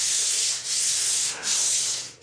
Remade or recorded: remade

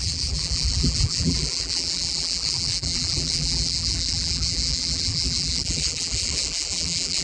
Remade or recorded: remade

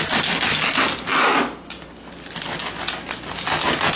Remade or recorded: recorded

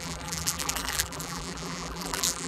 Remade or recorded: remade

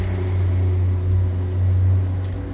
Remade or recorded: recorded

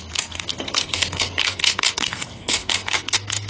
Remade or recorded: remade